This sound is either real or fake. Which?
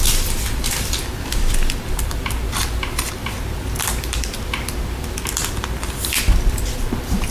fake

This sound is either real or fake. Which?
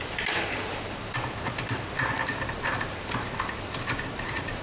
fake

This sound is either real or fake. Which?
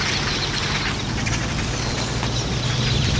real